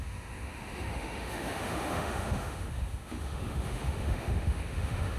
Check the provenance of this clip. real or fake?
fake